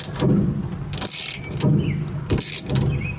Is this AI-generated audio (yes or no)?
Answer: no